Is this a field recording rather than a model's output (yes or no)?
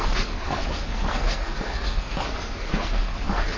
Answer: no